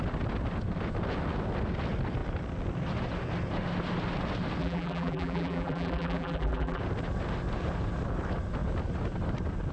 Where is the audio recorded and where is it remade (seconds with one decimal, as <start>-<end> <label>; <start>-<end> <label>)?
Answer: 0.0-4.6 recorded; 4.6-6.8 remade; 6.8-9.7 recorded